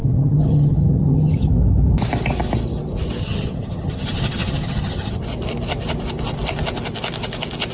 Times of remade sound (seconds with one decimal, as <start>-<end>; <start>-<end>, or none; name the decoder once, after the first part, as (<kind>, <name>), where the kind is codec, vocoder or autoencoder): 0.0-1.5 (vocoder, HiFi-GAN); 3.2-5.2